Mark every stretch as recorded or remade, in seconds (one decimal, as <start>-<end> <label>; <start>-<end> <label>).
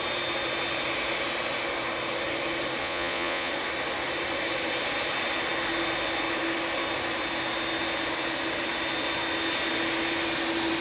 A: 0.0-2.8 recorded; 2.8-3.5 remade; 3.5-10.8 recorded